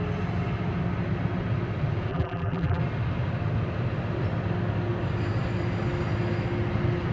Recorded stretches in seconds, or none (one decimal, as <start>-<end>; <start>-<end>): 0.0-2.1; 2.8-7.1